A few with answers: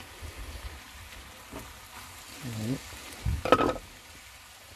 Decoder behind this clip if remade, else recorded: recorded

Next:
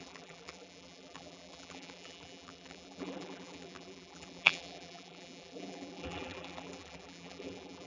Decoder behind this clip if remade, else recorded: remade, vocoder, BigVGAN v2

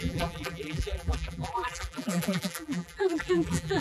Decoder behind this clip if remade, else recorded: remade, vocoder, BigVGAN v2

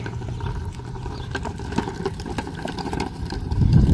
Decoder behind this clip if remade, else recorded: remade, vocoder, BigVGAN v2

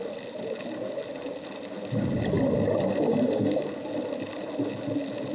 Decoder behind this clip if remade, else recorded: recorded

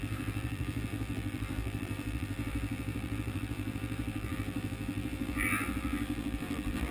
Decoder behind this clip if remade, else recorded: remade, vocoder, BigVGAN v2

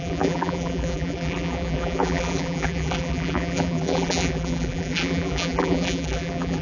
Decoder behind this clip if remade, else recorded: remade, vocoder, BigVGAN v2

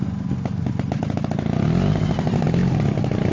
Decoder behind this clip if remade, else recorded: recorded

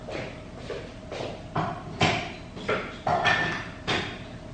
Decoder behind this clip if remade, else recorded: recorded